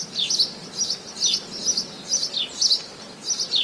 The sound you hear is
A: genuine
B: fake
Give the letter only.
A